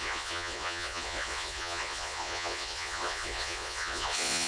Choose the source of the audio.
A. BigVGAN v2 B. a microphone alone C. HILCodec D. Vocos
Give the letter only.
D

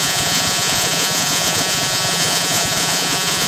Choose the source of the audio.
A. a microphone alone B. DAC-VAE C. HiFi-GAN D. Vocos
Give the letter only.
D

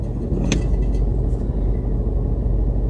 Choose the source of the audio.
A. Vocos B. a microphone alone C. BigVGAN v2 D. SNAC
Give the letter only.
B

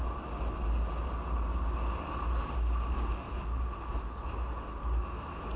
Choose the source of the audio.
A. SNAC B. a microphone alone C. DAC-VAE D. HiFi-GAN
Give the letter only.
B